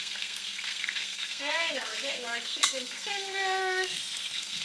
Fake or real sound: fake